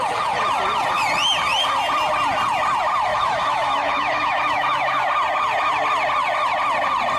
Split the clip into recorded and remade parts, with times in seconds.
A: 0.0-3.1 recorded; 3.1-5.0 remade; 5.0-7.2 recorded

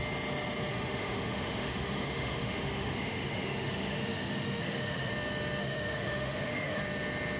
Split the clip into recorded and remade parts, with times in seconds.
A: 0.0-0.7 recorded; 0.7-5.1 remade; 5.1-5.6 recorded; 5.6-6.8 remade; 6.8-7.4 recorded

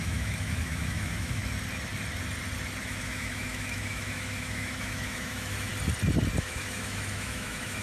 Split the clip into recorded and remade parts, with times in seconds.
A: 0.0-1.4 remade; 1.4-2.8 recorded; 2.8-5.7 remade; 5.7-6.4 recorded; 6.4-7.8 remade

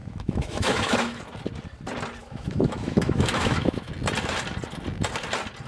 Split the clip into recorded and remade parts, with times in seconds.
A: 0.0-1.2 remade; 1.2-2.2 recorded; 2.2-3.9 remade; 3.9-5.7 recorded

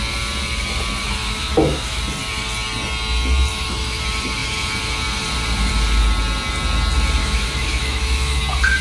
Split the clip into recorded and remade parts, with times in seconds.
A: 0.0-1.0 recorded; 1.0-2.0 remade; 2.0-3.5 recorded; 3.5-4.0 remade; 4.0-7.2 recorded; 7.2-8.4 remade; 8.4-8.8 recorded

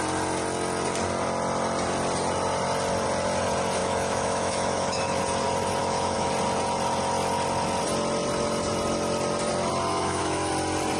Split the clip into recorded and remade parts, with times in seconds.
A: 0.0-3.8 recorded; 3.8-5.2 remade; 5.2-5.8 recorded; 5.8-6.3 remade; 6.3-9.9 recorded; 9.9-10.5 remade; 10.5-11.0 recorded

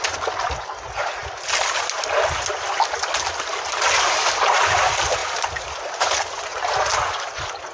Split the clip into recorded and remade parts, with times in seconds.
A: 0.0-7.7 recorded

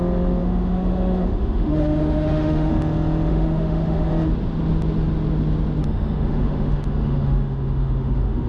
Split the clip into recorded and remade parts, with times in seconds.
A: 0.0-0.4 recorded; 0.4-2.7 remade; 2.7-3.3 recorded; 3.3-4.1 remade; 4.1-5.8 recorded; 5.8-8.5 remade